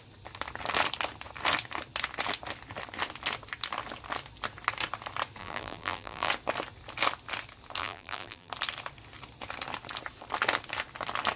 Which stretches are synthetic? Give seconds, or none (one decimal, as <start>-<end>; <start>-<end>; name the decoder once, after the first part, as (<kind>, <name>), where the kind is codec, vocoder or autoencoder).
5.4-6.3 (vocoder, BigVGAN v2); 7.8-8.5